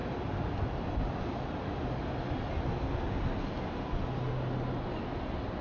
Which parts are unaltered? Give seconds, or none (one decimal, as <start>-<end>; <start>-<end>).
0.0-5.6

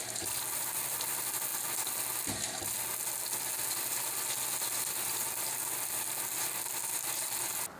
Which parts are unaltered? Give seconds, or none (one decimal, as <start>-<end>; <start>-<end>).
0.0-7.8